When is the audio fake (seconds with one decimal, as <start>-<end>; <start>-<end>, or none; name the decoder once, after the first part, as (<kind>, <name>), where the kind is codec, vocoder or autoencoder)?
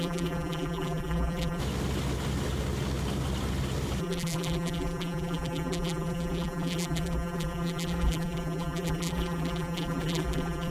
0.0-1.6 (vocoder, BigVGAN v2); 4.0-10.7